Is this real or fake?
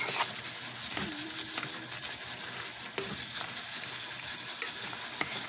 real